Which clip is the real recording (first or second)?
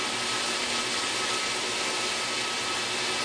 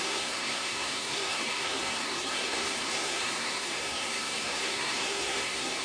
first